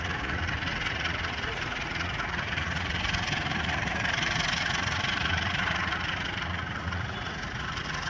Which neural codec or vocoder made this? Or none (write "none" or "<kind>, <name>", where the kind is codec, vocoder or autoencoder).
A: vocoder, Vocos